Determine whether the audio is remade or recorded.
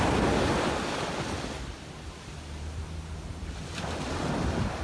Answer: recorded